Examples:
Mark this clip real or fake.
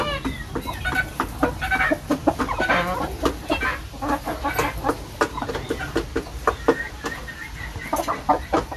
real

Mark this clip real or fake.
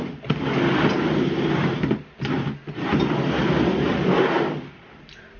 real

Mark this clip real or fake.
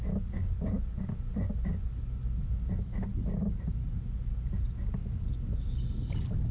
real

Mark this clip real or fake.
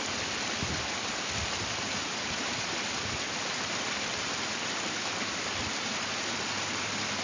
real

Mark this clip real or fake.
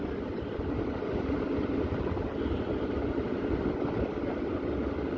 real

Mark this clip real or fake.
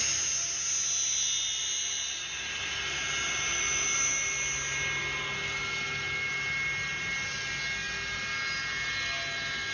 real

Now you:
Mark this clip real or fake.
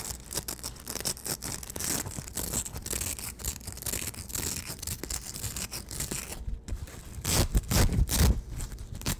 real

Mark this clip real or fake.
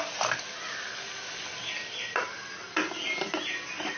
real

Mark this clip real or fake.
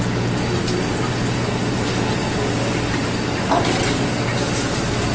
real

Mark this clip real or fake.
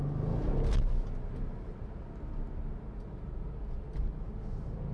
real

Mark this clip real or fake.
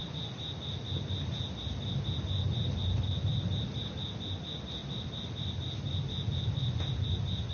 real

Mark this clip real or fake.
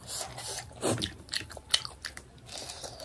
real